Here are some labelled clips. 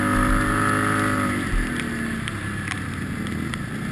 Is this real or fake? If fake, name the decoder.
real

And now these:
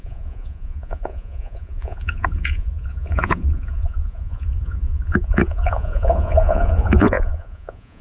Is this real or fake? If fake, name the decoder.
fake, vocoder, Vocos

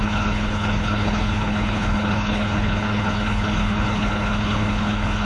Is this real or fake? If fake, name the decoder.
fake, codec, HILCodec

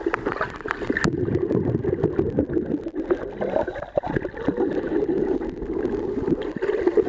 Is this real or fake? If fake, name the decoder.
real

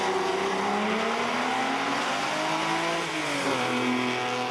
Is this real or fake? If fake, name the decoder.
real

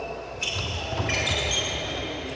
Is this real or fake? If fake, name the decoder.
real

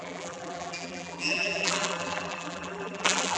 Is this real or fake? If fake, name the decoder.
fake, vocoder, BigVGAN v2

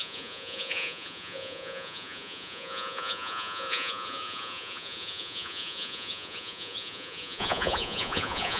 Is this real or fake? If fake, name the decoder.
fake, vocoder, Vocos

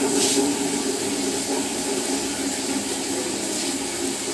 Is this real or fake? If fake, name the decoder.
real